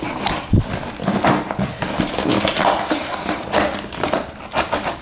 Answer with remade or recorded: recorded